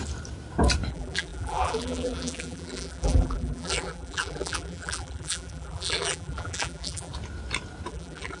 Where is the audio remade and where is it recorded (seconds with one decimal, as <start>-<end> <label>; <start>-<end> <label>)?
0.0-0.9 recorded; 0.9-7.1 remade; 7.1-7.9 recorded; 7.9-8.4 remade